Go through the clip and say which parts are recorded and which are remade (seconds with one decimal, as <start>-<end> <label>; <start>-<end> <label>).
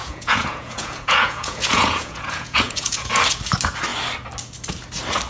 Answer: 0.0-3.2 remade; 3.2-5.3 recorded